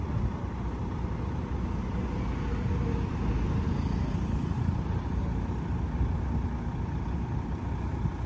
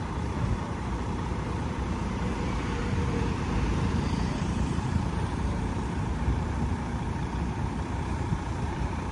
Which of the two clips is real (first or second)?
first